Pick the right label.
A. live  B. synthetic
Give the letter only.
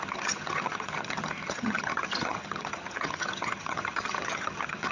B